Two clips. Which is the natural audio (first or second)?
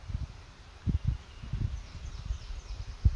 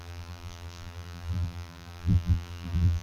first